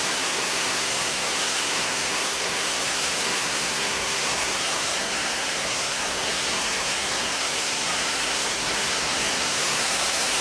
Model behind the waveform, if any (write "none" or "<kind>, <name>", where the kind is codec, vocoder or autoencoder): codec, SNAC